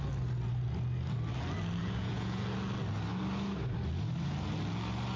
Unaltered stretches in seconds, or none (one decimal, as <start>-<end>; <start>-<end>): 0.0-1.8; 2.4-5.2